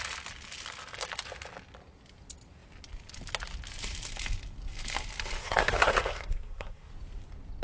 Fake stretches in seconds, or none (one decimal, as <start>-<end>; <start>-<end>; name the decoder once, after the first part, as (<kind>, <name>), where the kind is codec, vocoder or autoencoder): 5.4-6.9 (codec, SNAC)